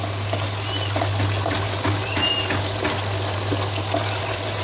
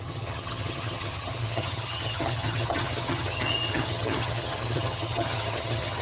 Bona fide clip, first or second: first